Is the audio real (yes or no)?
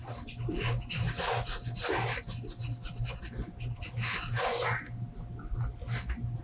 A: yes